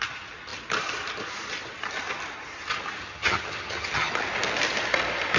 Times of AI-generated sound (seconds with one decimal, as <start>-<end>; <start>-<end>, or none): 3.0-4.1